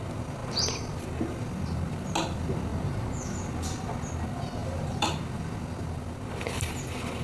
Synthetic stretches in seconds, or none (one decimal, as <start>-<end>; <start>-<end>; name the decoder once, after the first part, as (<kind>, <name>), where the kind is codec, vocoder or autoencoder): 2.7-3.5 (vocoder, BigVGAN v2); 4.6-5.2